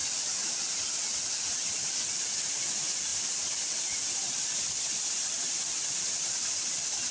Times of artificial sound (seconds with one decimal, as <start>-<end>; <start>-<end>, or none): none